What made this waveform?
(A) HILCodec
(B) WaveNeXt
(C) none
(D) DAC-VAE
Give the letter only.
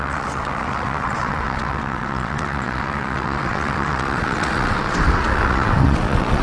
B